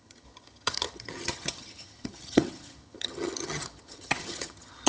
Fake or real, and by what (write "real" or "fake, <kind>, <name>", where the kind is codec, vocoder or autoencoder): fake, vocoder, HiFi-GAN